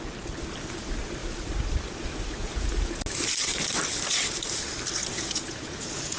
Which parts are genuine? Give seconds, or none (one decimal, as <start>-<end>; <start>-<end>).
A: 0.0-2.4; 3.0-5.0